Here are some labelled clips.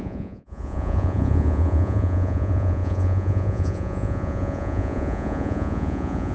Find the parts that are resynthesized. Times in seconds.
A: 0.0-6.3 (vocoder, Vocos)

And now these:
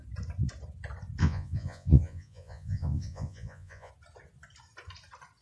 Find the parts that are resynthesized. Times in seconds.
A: 1.2-3.9 (vocoder, Vocos)

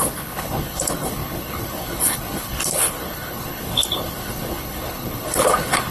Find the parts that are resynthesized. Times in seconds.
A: 0.0-5.9 (codec, HILCodec)

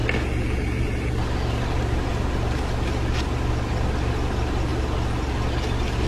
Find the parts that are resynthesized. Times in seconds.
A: none

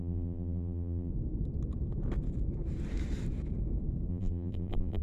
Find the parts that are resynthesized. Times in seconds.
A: 0.0-1.1 (vocoder, BigVGAN v2); 4.1-5.0

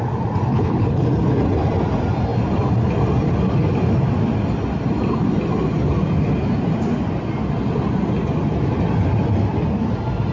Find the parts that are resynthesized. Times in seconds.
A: 0.5-1.0 (codec, HILCodec)

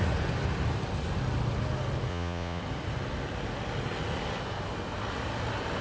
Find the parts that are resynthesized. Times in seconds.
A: 2.1-2.6 (vocoder, Vocos)